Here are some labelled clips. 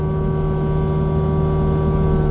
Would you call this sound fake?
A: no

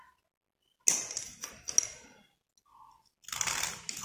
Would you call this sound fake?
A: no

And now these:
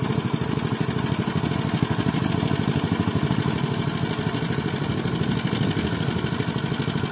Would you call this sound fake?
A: no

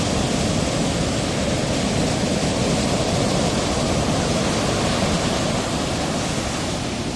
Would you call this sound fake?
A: no